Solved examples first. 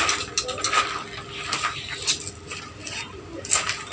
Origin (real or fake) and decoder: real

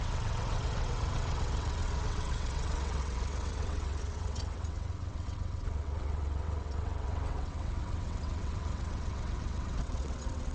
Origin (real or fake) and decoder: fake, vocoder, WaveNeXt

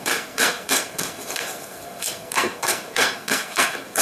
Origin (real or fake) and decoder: fake, codec, SNAC